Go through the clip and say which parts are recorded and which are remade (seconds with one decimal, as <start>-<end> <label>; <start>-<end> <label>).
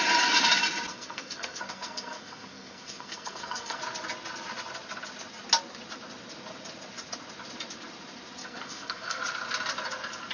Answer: 0.0-0.9 recorded; 0.9-3.8 remade; 3.8-8.4 recorded; 8.4-9.2 remade; 9.2-10.3 recorded